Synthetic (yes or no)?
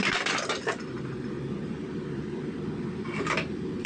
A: yes